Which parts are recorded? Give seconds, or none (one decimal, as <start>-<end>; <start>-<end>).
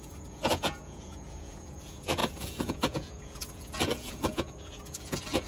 none